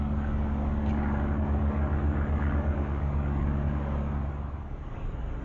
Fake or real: fake